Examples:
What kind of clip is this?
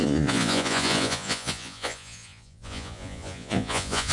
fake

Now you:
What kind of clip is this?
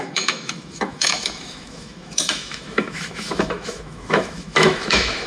fake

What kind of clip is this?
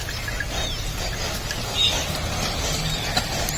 real